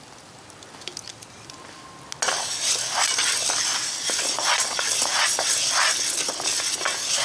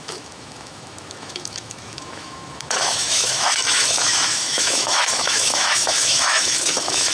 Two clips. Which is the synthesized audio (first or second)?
second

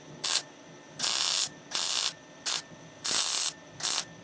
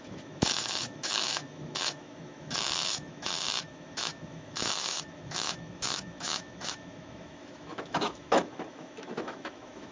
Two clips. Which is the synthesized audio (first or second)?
second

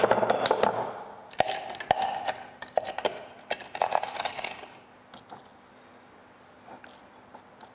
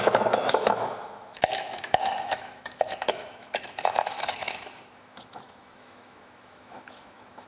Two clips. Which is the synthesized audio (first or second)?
second